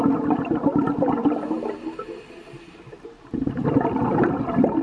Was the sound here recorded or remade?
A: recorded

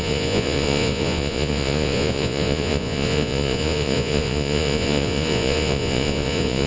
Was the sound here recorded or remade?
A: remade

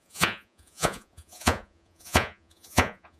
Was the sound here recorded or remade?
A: remade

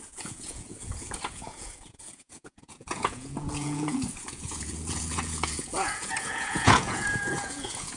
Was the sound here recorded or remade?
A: remade